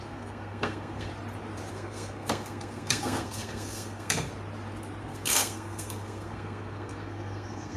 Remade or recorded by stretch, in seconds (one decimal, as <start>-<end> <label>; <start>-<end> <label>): 0.0-1.1 remade; 1.1-1.7 recorded; 1.7-4.3 remade; 4.3-5.0 recorded; 5.0-7.8 remade